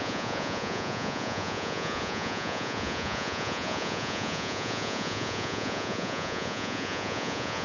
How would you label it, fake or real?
fake